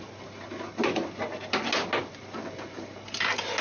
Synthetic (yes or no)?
no